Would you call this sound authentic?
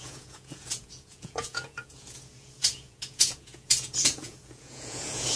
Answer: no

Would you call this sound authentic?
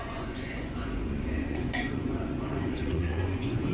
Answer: no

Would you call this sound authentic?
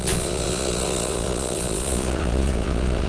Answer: no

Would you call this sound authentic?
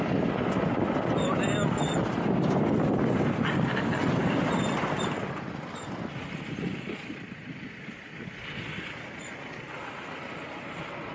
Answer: yes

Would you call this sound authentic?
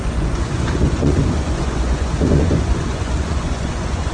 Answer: no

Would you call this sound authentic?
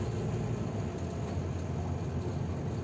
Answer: yes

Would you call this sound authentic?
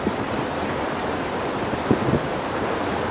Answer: yes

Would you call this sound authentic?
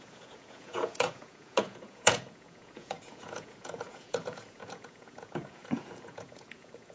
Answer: no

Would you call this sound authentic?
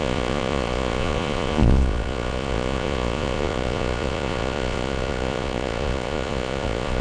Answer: no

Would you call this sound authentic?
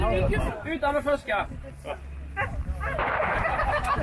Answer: yes